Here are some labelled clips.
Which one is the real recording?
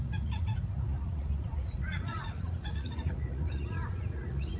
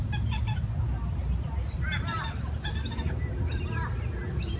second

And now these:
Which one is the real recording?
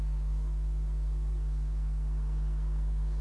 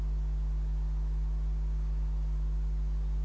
second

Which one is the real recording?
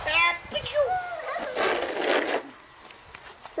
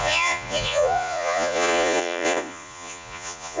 first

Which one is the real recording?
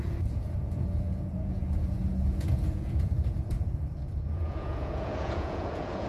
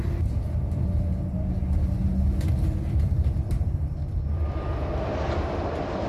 second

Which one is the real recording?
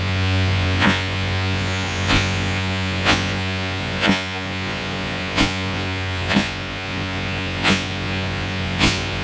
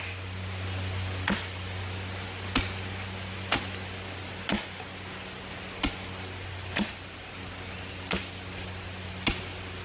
second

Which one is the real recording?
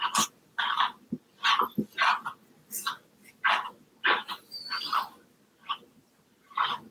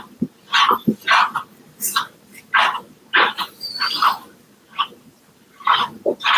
first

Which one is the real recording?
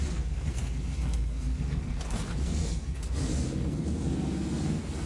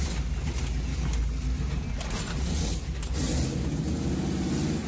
second